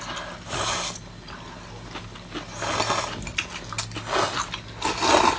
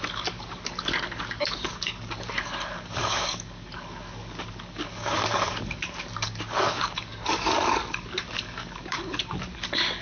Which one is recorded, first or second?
first